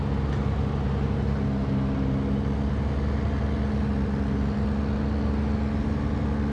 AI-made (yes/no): no